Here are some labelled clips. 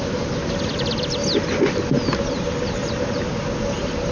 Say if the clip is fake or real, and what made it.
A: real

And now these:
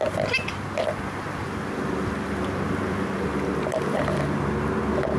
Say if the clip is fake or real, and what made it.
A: real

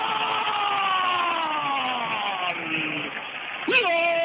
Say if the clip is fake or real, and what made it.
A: real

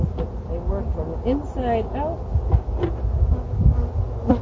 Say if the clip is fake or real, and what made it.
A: real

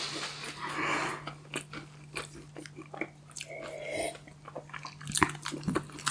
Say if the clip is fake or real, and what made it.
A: real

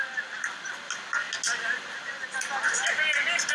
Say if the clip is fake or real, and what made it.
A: real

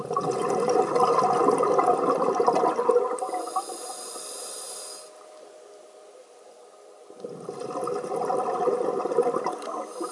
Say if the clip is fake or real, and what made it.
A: real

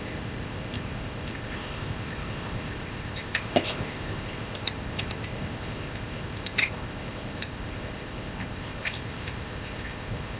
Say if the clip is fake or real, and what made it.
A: fake, codec, ZipCodec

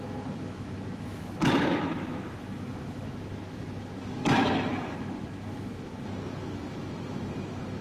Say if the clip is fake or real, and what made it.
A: fake, autoencoder, DAC-VAE